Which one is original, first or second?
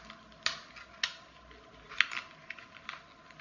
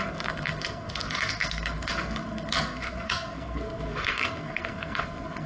first